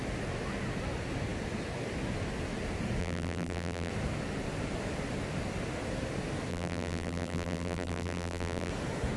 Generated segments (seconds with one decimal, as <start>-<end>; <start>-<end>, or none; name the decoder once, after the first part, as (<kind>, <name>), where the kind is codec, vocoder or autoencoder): 3.0-3.9 (vocoder, BigVGAN v2); 6.5-8.7